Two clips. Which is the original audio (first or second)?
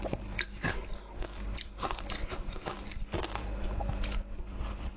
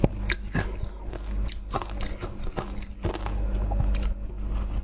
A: second